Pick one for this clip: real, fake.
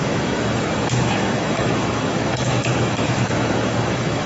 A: fake